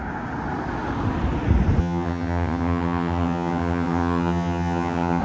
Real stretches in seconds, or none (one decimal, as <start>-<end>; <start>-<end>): 0.0-1.8